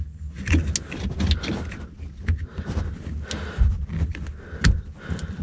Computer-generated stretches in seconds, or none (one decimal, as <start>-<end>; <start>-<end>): none